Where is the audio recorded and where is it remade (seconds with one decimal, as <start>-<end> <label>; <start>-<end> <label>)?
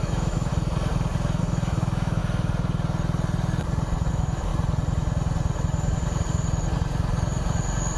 0.0-0.5 remade; 0.5-1.4 recorded; 1.4-2.2 remade; 2.2-4.1 recorded; 4.1-4.5 remade; 4.5-8.0 recorded